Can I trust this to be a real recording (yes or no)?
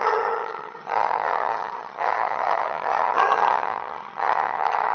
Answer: no